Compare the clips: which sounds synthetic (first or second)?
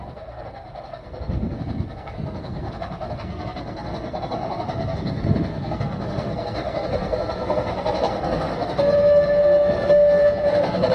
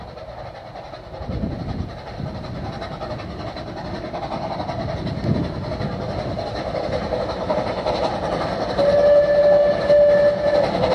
first